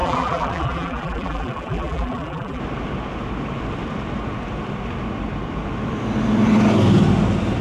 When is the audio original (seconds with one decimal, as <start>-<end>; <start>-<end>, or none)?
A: 2.6-7.6